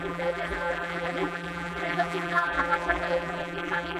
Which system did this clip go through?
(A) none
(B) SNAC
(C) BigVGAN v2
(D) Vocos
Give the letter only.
C